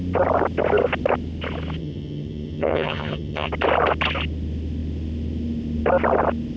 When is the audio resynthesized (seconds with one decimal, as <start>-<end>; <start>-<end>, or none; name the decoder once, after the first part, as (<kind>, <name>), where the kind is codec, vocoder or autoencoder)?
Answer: 1.8-3.5 (vocoder, HiFi-GAN)